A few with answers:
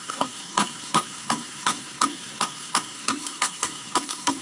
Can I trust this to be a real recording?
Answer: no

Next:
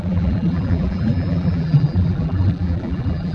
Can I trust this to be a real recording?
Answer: no